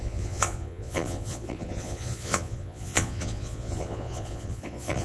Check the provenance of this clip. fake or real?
fake